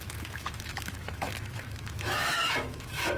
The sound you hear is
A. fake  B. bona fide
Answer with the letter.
A